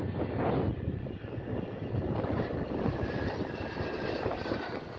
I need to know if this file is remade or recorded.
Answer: recorded